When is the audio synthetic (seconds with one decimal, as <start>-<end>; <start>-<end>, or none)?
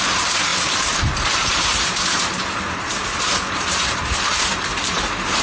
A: 0.0-5.4